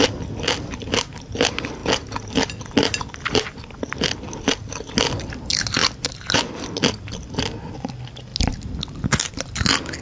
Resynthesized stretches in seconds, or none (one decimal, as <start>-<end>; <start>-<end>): 1.8-2.7; 5.8-6.7